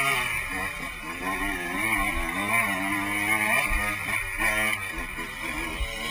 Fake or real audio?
real